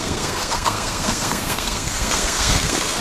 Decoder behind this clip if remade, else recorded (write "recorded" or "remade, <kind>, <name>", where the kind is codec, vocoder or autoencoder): remade, codec, SNAC